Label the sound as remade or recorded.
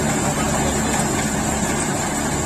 recorded